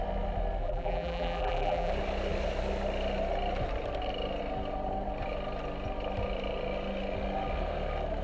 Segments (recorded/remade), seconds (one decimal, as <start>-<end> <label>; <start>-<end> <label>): 0.0-0.6 recorded; 0.6-1.9 remade; 1.9-8.2 recorded